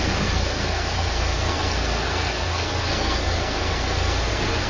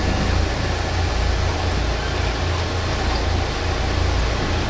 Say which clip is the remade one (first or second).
first